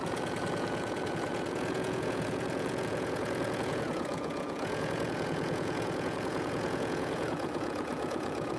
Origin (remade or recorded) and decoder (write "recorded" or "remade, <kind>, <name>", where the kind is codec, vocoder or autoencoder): remade, vocoder, Vocos